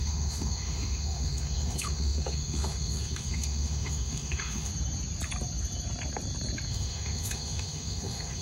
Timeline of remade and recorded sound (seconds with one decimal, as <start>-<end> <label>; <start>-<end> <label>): 0.0-4.7 remade; 4.7-6.7 recorded; 6.7-8.4 remade